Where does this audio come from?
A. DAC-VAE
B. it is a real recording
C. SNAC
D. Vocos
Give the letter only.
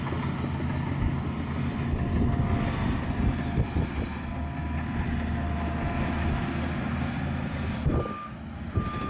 B